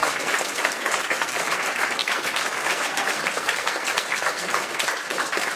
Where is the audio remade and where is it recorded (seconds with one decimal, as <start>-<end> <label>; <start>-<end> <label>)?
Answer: 0.0-5.6 remade